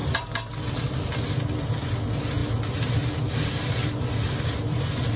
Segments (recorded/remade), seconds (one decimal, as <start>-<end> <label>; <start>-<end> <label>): 0.0-5.2 recorded